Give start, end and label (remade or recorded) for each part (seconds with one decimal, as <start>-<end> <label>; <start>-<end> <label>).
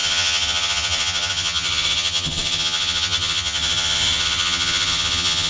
0.0-5.5 remade